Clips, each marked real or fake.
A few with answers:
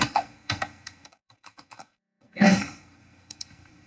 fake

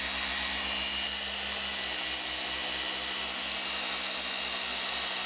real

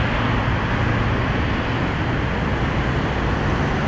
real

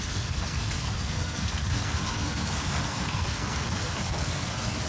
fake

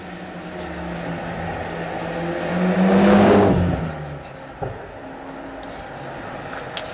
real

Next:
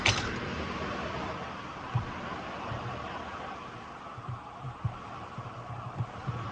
real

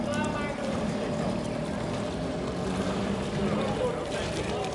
real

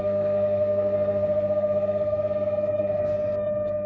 fake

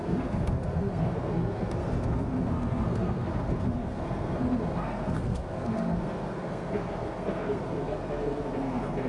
fake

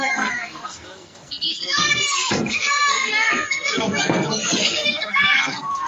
fake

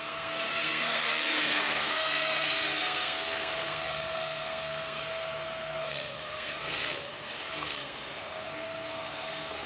fake